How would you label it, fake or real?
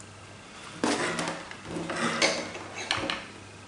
real